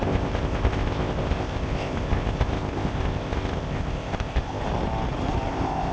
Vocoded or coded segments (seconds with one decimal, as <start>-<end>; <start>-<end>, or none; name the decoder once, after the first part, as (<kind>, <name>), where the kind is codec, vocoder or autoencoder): 0.0-4.6 (codec, ZipCodec); 5.5-5.9